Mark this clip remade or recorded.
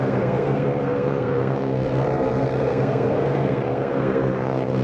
remade